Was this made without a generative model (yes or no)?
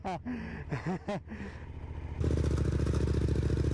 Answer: yes